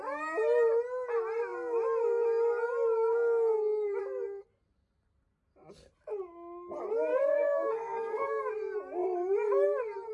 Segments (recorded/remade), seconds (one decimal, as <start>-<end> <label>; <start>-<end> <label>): 0.0-7.1 recorded; 7.1-8.4 remade; 8.4-10.1 recorded